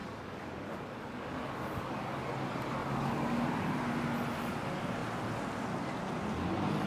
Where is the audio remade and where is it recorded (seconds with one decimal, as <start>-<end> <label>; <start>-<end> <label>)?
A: 0.0-2.3 remade; 2.3-2.8 recorded; 2.8-3.8 remade; 3.8-6.9 recorded

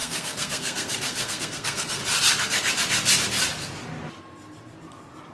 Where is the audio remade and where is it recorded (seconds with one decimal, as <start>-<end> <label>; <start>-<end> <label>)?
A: 0.0-2.0 remade; 2.0-5.3 recorded